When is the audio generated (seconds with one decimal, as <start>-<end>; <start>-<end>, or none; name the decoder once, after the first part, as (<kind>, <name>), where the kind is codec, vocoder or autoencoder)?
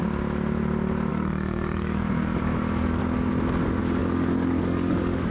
1.1-3.0 (codec, DAC); 4.0-5.3